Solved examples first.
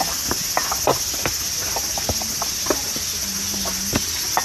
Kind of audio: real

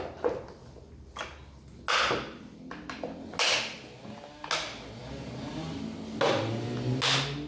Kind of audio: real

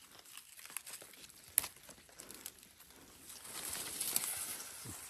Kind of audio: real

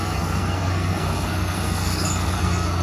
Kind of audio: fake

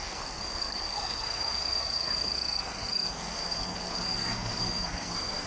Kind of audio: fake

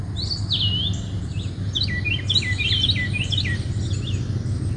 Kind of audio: real